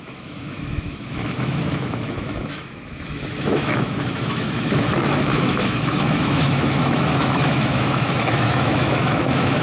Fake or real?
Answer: fake